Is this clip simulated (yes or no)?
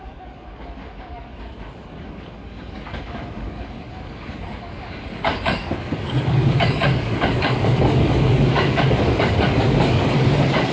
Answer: yes